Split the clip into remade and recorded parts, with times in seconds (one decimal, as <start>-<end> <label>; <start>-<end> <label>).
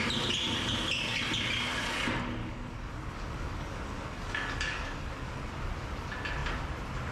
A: 0.0-2.4 recorded; 2.4-5.5 remade; 5.5-7.1 recorded